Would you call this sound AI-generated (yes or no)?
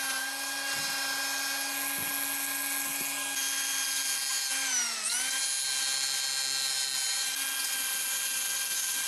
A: no